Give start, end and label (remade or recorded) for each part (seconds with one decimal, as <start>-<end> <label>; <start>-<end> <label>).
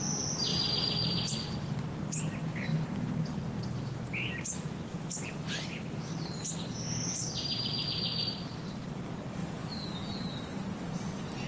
0.0-0.5 recorded; 0.5-1.3 remade; 1.3-4.9 recorded; 4.9-5.5 remade; 5.5-9.4 recorded; 9.4-10.0 remade; 10.0-11.5 recorded